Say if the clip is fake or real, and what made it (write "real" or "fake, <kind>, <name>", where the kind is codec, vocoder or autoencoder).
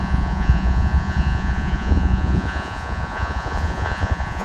fake, vocoder, Vocos